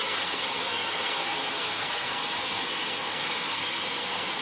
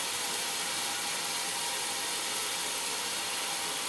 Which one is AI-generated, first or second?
first